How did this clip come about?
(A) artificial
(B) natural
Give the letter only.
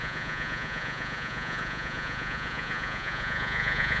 A